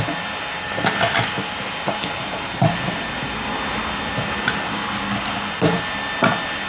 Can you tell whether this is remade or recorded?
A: recorded